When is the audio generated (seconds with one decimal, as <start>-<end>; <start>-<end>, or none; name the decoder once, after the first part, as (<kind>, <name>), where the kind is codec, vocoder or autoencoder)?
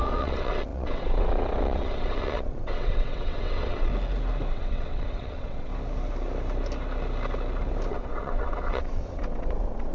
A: 0.0-3.9 (vocoder, WaveNeXt); 4.5-5.7; 7.9-9.9